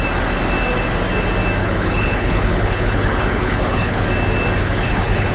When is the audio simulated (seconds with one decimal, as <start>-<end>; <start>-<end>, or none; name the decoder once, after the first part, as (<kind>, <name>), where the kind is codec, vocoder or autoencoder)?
1.6-4.0 (codec, HILCodec); 4.6-5.3